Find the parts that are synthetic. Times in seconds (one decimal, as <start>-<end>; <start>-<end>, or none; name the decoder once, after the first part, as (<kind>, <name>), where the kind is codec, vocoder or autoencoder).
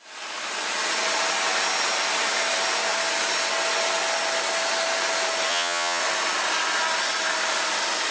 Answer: 5.5-6.0 (vocoder, HiFi-GAN)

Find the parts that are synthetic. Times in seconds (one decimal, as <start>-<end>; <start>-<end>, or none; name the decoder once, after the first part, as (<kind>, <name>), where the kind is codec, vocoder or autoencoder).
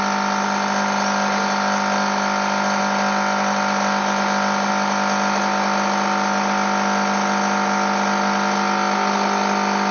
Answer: none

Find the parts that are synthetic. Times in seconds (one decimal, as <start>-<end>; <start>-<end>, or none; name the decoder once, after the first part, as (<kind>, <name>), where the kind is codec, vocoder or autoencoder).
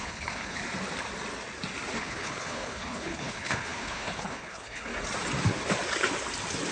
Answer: 0.0-0.6 (codec, HILCodec); 2.0-4.9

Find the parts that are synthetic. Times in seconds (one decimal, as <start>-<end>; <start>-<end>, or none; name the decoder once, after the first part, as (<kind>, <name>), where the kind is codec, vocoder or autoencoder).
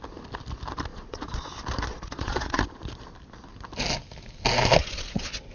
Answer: 0.9-1.5 (vocoder, Vocos); 1.9-2.6; 4.8-5.5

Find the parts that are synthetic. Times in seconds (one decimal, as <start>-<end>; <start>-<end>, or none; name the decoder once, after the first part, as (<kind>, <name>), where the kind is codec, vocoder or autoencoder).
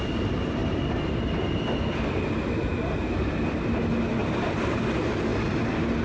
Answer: 0.6-3.7 (vocoder, BigVGAN v2); 4.2-4.8; 5.3-6.0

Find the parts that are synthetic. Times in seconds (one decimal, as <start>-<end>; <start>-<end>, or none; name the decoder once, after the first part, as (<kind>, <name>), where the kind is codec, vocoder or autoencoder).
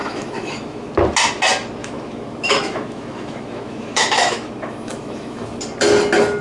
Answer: 0.0-0.9 (autoencoder, DAC-VAE); 1.8-5.6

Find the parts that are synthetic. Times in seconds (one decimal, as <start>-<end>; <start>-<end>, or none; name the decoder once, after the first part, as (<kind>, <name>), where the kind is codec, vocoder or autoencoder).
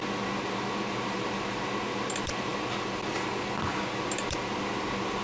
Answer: none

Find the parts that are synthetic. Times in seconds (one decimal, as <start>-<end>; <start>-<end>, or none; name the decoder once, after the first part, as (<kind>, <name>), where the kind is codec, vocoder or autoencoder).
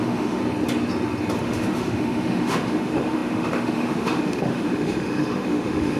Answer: 0.0-0.4 (autoencoder, DAC-VAE); 1.4-6.0